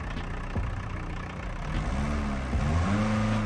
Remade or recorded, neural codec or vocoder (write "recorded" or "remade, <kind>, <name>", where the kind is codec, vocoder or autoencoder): recorded